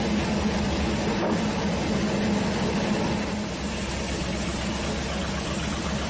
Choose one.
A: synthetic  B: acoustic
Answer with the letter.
B